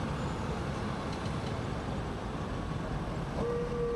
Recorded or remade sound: recorded